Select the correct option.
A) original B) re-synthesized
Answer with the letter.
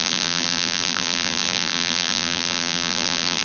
B